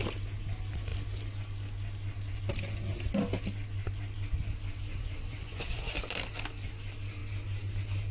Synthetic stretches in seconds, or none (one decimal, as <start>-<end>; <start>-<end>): 4.9-5.8